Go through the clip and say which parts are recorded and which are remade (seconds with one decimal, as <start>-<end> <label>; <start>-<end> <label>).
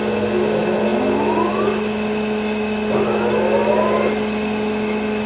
0.0-5.3 recorded